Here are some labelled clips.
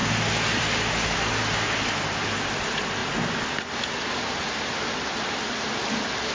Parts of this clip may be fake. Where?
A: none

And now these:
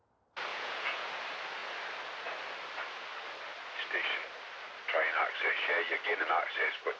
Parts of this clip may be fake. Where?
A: 0.5-1.1 (vocoder, Vocos)

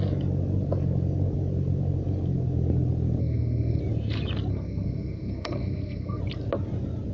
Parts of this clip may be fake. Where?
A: 3.2-3.8 (codec, SNAC); 4.5-6.2